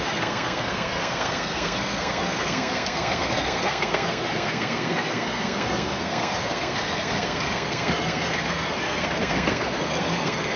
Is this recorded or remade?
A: remade